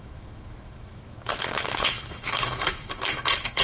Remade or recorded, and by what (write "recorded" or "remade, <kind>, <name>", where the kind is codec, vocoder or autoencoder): remade, autoencoder, DAC-VAE